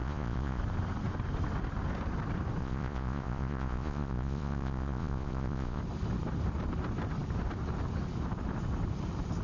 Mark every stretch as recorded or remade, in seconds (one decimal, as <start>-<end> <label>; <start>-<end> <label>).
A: 0.0-0.6 remade; 0.6-2.6 recorded; 2.6-5.8 remade; 5.8-9.4 recorded